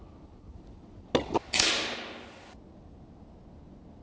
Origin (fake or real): real